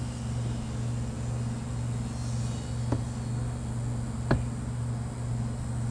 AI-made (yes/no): no